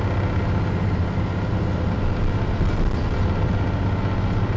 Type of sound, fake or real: real